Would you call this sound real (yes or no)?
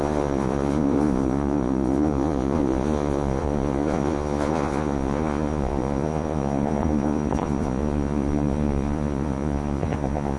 no